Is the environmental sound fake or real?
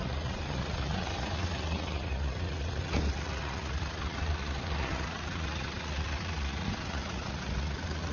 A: fake